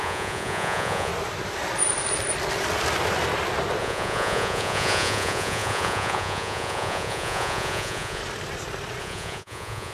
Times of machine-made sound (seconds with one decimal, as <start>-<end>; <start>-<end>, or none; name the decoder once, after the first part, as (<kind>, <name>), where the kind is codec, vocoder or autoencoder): 0.0-1.1 (vocoder, Vocos); 3.8-8.2; 9.0-9.9